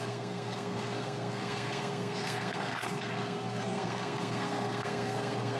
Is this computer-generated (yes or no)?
yes